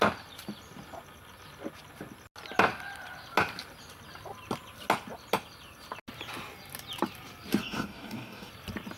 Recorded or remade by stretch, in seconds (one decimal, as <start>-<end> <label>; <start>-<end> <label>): 0.0-7.6 recorded; 7.6-8.5 remade; 8.5-9.0 recorded